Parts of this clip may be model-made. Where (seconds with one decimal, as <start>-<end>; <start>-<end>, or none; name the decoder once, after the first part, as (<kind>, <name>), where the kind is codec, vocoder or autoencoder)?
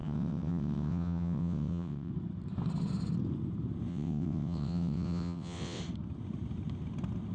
0.0-2.1 (vocoder, WaveNeXt); 3.9-5.8